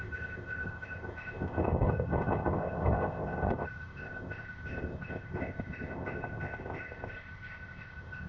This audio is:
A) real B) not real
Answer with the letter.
B